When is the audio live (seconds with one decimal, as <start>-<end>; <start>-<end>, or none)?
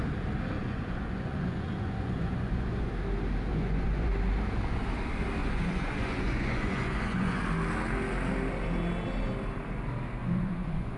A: 0.0-0.6; 2.9-3.5; 4.1-5.4; 7.4-10.2